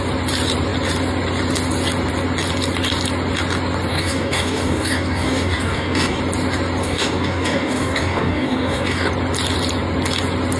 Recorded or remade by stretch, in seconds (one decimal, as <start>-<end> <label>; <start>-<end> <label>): 0.0-3.9 recorded; 3.9-6.2 remade; 6.2-6.8 recorded; 6.8-9.1 remade; 9.1-10.6 recorded